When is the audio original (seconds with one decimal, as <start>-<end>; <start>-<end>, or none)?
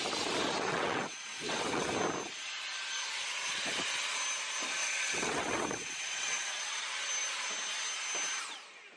0.0-0.7; 1.9-4.8; 6.8-9.0